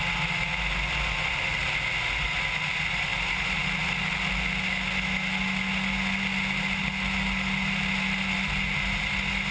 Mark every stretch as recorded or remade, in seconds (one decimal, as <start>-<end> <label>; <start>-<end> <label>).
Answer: 0.0-9.5 recorded